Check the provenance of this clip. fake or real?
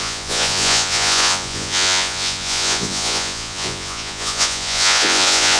fake